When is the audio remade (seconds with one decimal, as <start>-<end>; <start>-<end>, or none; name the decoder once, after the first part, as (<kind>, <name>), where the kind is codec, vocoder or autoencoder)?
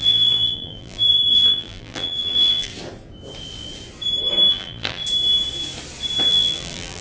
0.0-2.7 (vocoder, BigVGAN v2); 4.5-5.0; 6.3-7.0